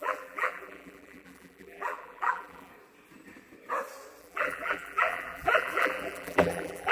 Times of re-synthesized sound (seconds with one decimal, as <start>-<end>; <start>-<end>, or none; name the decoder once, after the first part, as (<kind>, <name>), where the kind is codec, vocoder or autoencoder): 0.0-2.7 (vocoder, BigVGAN v2); 4.2-6.9